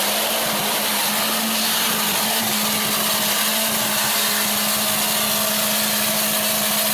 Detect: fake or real real